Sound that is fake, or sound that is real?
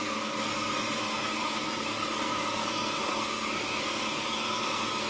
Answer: fake